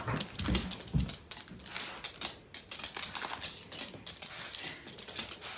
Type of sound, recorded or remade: recorded